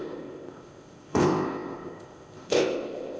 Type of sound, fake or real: fake